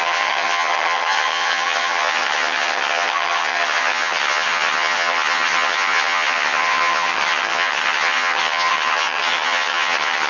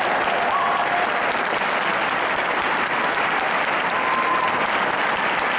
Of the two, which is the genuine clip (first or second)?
second